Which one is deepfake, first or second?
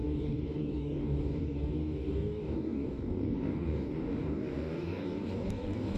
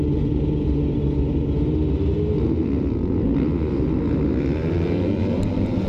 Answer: first